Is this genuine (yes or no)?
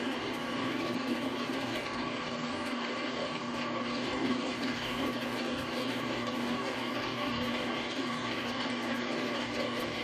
no